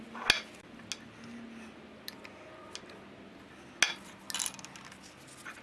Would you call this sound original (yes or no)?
yes